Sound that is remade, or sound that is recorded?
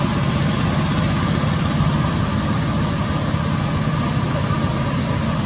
recorded